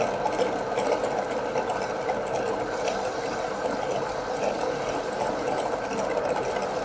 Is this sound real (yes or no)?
yes